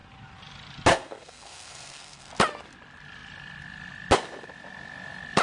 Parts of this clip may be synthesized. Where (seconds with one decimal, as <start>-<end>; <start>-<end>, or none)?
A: 0.9-2.3